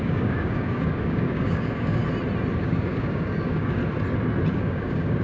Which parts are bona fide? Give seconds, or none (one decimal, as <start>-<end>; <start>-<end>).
2.0-2.6; 3.8-4.6